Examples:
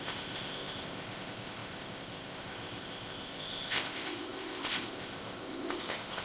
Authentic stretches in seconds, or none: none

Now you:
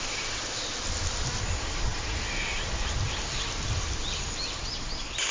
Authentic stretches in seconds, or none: 0.0-5.3